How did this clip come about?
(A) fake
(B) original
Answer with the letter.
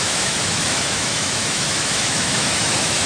A